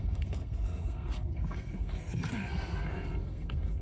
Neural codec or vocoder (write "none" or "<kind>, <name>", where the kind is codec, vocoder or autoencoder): codec, SNAC